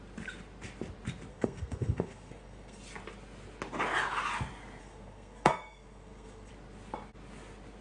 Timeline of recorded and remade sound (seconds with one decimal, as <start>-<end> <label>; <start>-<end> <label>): 0.0-1.3 recorded; 1.3-2.8 remade; 2.8-4.8 recorded; 4.8-6.5 remade; 6.5-7.8 recorded